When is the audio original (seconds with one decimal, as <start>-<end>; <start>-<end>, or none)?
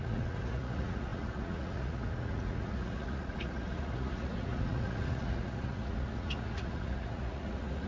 none